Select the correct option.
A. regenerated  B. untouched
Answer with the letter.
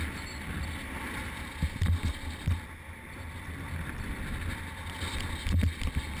B